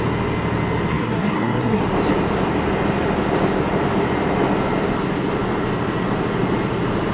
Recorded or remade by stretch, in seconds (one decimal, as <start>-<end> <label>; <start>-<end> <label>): 0.0-0.9 recorded; 0.9-1.8 remade; 1.8-7.1 recorded

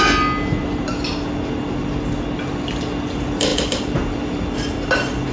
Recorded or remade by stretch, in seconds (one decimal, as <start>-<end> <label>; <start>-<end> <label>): 0.0-5.3 recorded

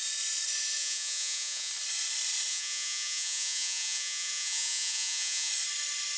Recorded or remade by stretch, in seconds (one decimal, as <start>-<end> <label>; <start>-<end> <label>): 0.0-0.8 recorded; 0.8-1.7 remade; 1.7-2.5 recorded; 2.5-5.5 remade; 5.5-6.2 recorded

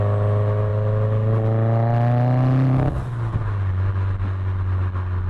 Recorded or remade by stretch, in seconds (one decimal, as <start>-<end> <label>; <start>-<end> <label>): 0.0-5.3 recorded

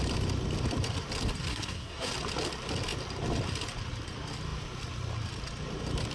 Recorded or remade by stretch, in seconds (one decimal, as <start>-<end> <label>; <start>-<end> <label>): 0.0-1.5 recorded; 1.5-2.1 remade; 2.1-6.1 recorded